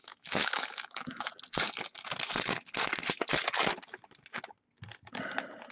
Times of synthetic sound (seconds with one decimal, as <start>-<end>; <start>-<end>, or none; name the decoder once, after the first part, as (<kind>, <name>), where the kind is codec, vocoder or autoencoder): 0.0-1.3 (autoencoder, DAC-VAE)